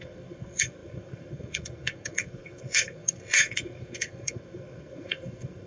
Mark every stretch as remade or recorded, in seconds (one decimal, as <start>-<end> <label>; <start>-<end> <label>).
0.0-5.7 remade